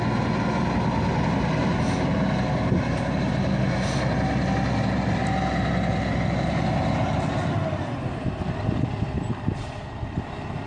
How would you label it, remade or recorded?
recorded